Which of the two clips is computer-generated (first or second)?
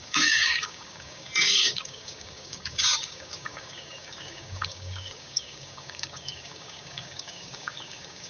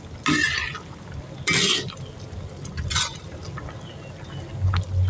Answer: first